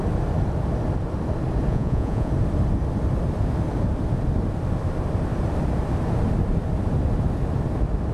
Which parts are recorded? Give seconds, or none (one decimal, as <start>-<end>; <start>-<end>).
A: 0.0-1.7; 2.3-8.1